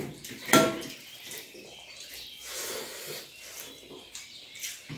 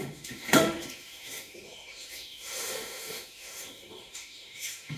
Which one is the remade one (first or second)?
second